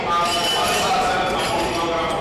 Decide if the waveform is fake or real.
real